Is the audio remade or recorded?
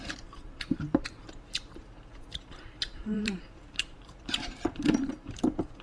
remade